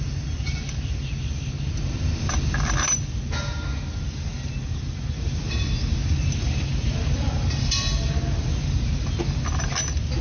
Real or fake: real